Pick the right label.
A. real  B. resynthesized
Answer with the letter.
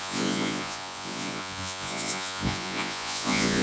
B